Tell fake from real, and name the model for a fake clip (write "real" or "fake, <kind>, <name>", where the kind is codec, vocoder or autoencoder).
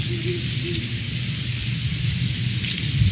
real